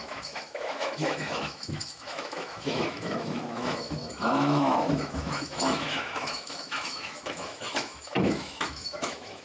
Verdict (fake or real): fake